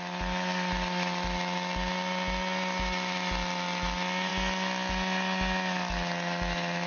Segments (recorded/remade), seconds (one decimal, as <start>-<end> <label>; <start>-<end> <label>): 0.0-6.9 recorded